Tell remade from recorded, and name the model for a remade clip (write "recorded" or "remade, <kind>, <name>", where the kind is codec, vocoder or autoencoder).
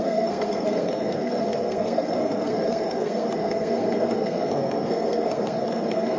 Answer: remade, codec, SNAC